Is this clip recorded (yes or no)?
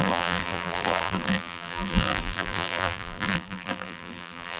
no